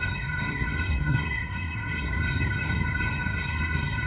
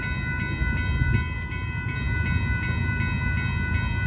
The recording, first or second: second